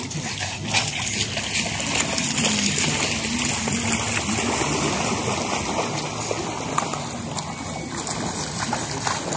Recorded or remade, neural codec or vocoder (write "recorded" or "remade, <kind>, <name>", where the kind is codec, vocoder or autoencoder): recorded